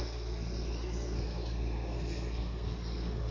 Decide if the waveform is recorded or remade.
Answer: remade